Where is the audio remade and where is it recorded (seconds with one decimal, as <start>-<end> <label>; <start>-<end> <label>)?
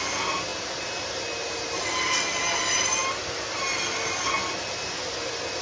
0.0-5.6 recorded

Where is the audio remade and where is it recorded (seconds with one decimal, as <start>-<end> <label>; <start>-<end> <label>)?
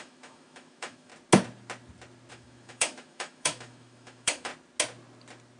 0.0-1.1 remade; 1.1-2.3 recorded; 2.3-4.5 remade; 4.5-5.6 recorded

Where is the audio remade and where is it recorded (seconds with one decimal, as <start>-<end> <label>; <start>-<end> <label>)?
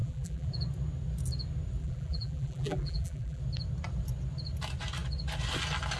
0.0-0.5 remade; 0.5-1.8 recorded; 1.8-3.4 remade; 3.4-6.0 recorded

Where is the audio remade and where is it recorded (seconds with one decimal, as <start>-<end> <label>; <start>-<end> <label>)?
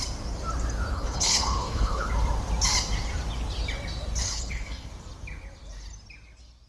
0.0-0.9 recorded; 0.9-2.1 remade; 2.1-4.2 recorded; 4.2-4.9 remade; 4.9-6.7 recorded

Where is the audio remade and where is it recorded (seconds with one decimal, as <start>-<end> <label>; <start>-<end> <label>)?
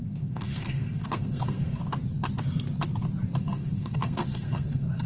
0.0-1.8 remade; 1.8-3.4 recorded; 3.4-5.1 remade